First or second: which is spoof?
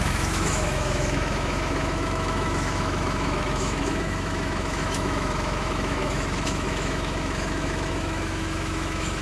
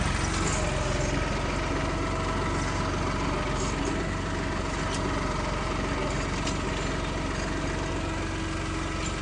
first